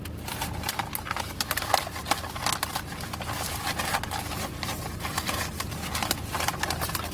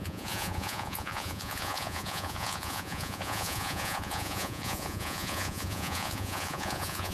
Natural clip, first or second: first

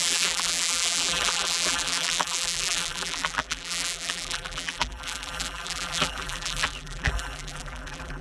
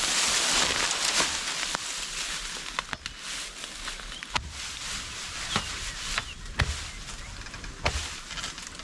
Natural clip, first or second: second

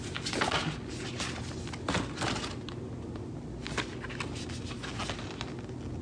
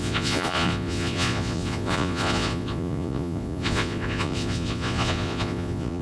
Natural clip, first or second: first